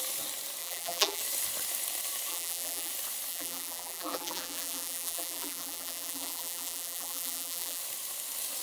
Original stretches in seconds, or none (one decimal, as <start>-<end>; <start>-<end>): 0.0-0.6; 1.2-2.3; 2.9-3.3; 7.8-8.6